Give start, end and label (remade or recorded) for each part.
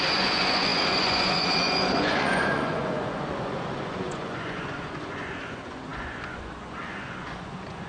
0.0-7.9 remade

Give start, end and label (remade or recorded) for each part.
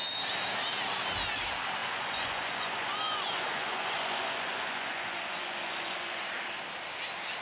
0.0-1.8 recorded; 1.8-6.2 remade; 6.2-7.4 recorded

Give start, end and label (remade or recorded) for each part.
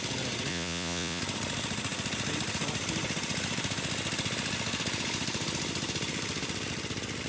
0.0-0.5 recorded; 0.5-1.2 remade; 1.2-7.3 recorded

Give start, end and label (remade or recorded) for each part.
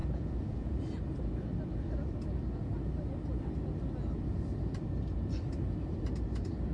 0.0-0.8 remade; 0.8-6.7 recorded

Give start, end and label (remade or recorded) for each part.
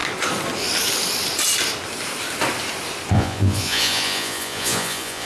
0.0-3.1 recorded; 3.1-5.2 remade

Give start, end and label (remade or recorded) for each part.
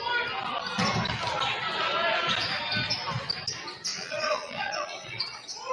0.0-3.9 recorded; 3.9-5.7 remade